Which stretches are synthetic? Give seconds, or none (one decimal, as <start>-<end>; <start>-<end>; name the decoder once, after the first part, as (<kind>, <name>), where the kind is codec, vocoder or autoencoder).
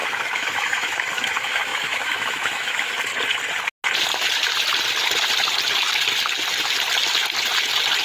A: 0.0-3.1 (autoencoder, DAC-VAE)